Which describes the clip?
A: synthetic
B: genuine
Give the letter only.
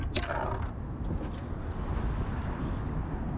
B